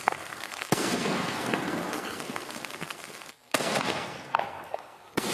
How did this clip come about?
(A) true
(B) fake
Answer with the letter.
B